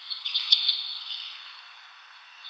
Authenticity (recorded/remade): remade